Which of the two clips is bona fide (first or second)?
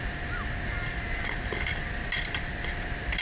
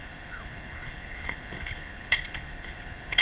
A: first